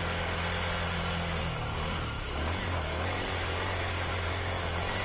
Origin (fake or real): real